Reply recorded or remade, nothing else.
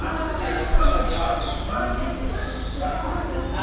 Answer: recorded